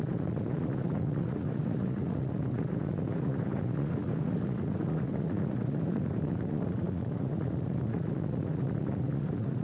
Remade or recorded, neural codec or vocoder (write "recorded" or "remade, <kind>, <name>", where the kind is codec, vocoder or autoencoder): remade, vocoder, Vocos